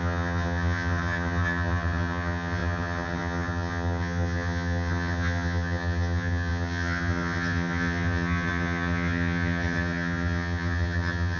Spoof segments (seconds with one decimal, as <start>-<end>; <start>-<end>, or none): 0.0-11.4